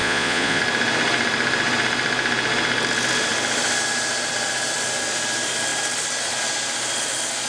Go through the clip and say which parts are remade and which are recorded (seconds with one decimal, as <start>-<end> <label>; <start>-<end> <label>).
0.0-0.6 remade; 0.6-7.5 recorded